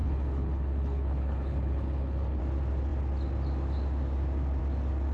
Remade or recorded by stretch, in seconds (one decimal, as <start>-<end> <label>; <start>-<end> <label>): 0.0-2.4 remade; 2.4-5.1 recorded

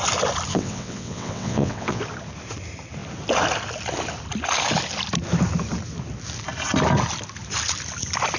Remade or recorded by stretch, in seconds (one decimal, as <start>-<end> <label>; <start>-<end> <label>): 0.0-0.5 recorded; 0.5-2.0 remade; 2.0-8.4 recorded

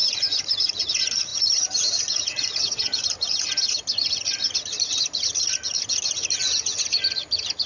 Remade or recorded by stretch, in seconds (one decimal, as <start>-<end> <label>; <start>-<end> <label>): 0.0-0.9 remade; 0.9-1.3 recorded; 1.3-5.5 remade; 5.5-7.7 recorded

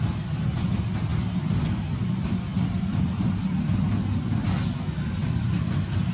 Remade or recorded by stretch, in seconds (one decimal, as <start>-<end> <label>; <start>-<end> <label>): 0.0-6.1 recorded

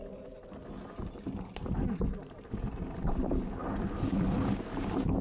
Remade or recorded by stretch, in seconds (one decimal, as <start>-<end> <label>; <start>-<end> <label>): 0.0-5.2 recorded

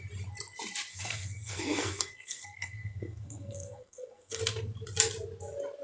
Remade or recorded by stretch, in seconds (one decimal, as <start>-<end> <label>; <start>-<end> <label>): 0.0-0.9 recorded; 0.9-4.4 remade; 4.4-5.8 recorded